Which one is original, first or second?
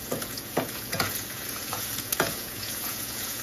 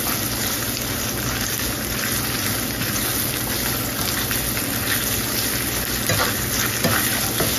second